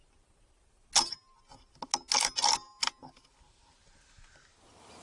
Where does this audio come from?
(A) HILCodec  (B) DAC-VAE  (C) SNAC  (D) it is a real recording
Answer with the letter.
D